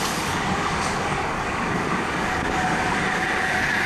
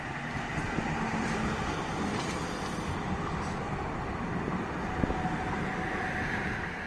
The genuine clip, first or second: second